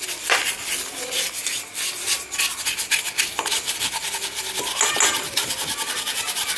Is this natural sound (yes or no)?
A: yes